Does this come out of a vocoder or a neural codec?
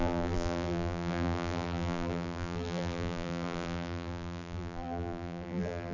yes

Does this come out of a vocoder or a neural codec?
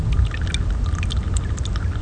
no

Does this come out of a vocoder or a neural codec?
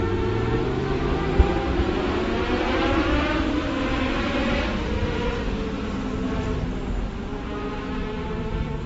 no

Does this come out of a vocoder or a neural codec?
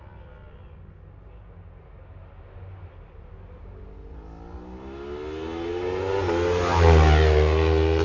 no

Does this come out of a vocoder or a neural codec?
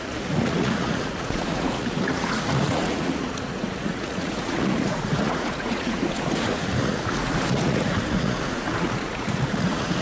yes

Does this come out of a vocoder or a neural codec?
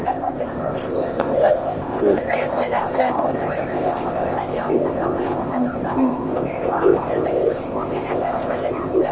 yes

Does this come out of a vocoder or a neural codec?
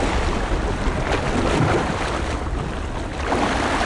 no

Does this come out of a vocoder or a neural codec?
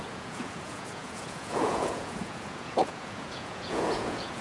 yes